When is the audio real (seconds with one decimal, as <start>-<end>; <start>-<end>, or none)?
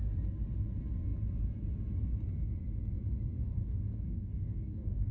0.0-3.4